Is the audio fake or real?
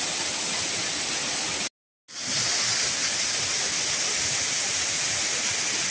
real